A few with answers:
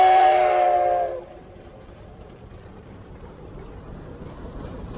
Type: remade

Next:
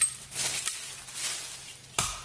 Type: recorded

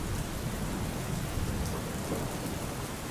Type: recorded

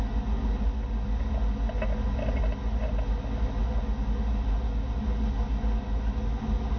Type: recorded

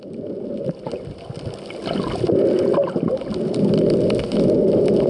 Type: recorded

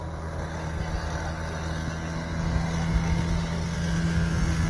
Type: recorded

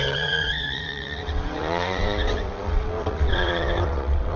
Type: remade